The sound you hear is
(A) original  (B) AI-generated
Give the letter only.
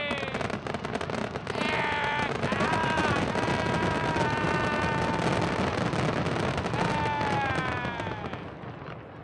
A